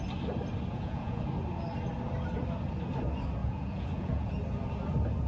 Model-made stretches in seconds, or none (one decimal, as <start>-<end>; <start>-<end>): 0.7-1.3; 3.4-4.3